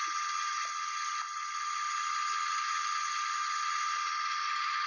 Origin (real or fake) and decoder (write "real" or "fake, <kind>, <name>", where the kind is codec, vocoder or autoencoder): real